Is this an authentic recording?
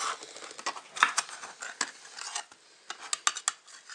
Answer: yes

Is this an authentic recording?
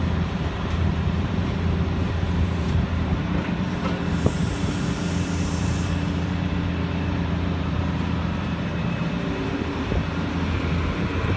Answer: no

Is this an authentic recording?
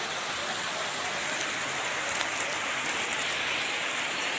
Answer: yes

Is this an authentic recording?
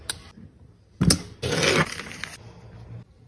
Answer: yes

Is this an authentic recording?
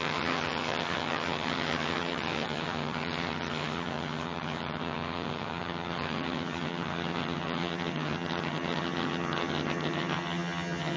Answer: no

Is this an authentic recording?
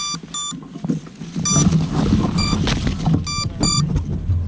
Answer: yes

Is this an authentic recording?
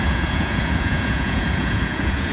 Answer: no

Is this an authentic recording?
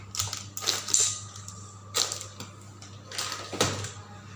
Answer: yes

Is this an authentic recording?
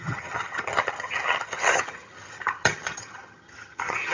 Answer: no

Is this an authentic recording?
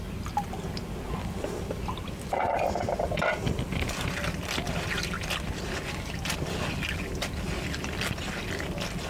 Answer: yes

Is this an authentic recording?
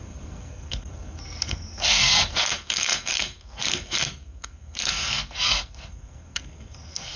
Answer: no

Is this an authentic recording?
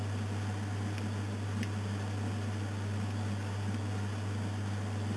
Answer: yes